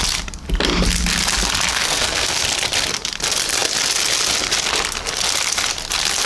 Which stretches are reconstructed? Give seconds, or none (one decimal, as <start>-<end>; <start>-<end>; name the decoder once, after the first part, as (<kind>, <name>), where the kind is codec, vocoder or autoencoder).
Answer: 1.7-2.4 (codec, SNAC)